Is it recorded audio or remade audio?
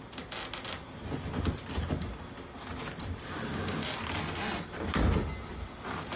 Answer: recorded